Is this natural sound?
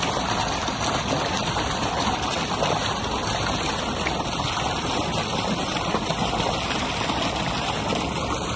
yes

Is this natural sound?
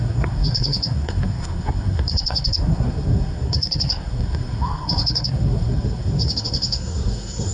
no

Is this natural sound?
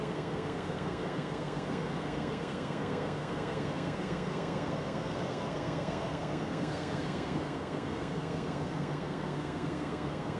no